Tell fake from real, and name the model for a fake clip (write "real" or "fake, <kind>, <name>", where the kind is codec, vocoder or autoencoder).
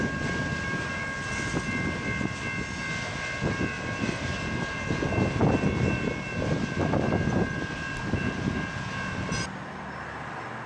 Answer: real